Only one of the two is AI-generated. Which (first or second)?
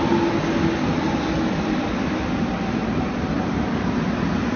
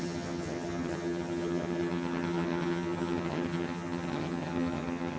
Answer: second